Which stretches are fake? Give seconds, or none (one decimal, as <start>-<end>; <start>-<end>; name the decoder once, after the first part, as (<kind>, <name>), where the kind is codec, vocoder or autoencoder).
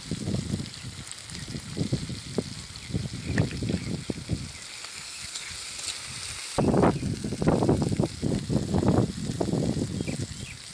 4.9-5.5 (codec, SNAC)